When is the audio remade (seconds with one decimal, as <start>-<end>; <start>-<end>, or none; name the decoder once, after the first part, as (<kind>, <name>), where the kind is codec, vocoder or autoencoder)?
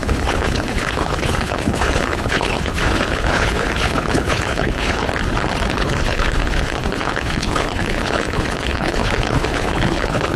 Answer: 0.0-5.1 (codec, HILCodec); 5.7-10.4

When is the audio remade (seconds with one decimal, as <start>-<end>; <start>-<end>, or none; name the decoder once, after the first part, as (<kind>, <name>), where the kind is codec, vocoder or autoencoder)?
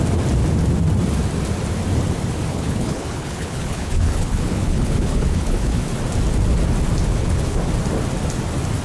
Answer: 2.5-5.8 (codec, HILCodec); 7.1-7.7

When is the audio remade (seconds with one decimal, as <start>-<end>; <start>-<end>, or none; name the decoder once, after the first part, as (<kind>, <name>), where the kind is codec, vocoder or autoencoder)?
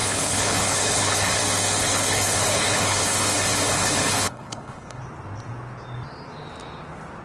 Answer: 0.0-1.4 (codec, HILCodec); 1.8-5.0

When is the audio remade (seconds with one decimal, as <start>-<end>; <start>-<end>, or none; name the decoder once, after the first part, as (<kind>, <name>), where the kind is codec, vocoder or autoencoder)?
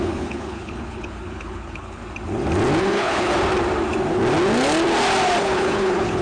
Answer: 0.0-2.0 (codec, HILCodec); 2.8-3.3; 5.4-6.2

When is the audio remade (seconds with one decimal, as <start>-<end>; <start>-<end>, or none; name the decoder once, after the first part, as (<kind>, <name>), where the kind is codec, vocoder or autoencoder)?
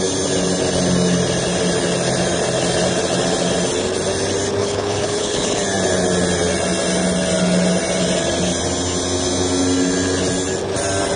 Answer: 4.6-5.6 (codec, HILCodec)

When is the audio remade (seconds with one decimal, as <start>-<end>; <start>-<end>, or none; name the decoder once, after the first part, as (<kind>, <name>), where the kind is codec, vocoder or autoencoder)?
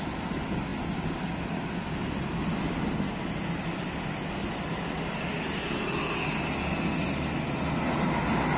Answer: none